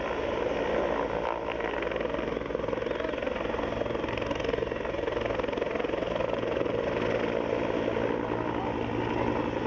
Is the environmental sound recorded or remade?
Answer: recorded